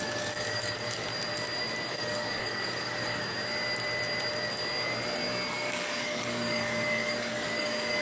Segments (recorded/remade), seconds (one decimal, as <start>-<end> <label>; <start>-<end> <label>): 0.0-1.1 remade; 1.1-1.9 recorded; 1.9-3.2 remade; 3.2-5.5 recorded; 5.5-8.0 remade